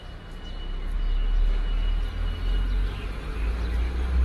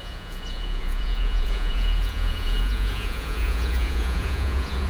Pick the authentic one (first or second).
first